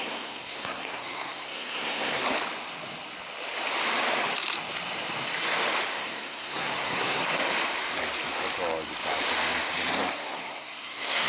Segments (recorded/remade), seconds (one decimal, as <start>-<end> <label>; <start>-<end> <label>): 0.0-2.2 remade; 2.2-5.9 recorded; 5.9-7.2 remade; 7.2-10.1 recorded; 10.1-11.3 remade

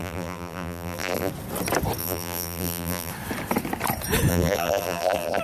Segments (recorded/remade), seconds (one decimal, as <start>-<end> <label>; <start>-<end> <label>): 0.0-1.3 remade; 1.3-2.0 recorded; 2.0-3.1 remade; 3.1-4.3 recorded; 4.3-5.4 remade

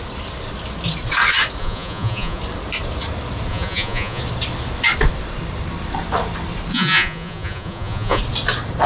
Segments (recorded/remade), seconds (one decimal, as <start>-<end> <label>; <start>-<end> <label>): 0.0-1.6 recorded; 1.6-2.4 remade; 2.4-3.5 recorded; 3.5-4.2 remade; 4.2-6.7 recorded; 6.7-8.2 remade; 8.2-8.9 recorded

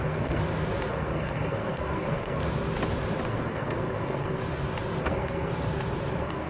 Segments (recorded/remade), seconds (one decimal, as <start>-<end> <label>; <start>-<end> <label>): 0.0-0.4 remade; 0.4-0.9 recorded; 0.9-2.4 remade; 2.4-3.3 recorded; 3.3-4.4 remade; 4.4-5.0 recorded; 5.0-5.5 remade; 5.5-6.1 recorded; 6.1-6.5 remade